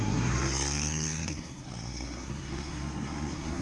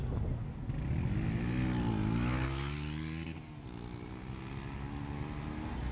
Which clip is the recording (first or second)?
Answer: second